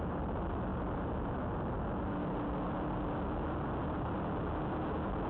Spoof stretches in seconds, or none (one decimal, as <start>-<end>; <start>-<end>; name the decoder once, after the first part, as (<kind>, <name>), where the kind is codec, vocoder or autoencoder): none